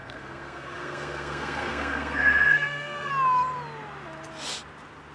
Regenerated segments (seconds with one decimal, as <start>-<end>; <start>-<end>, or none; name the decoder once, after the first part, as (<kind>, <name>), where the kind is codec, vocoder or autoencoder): 0.0-3.1 (codec, SNAC)

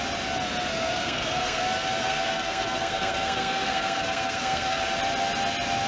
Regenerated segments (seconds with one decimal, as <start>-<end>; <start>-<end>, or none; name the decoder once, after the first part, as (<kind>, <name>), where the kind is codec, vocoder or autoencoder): 0.7-1.6 (codec, SNAC); 2.0-4.8

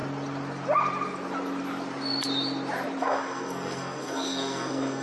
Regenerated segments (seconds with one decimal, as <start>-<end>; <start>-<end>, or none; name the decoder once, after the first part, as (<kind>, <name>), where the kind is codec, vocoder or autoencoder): 3.0-5.0 (codec, SNAC)

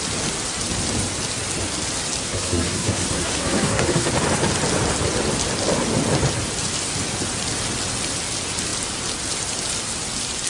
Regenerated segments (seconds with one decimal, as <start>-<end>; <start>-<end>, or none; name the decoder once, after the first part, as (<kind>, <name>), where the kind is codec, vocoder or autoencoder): 2.2-4.1 (codec, SNAC)